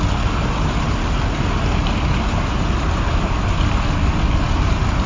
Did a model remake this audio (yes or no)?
no